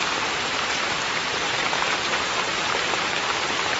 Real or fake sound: fake